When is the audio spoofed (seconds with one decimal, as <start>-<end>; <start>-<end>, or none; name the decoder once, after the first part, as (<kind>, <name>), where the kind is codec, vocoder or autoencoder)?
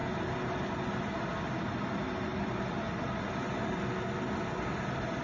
2.3-3.9 (vocoder, BigVGAN v2)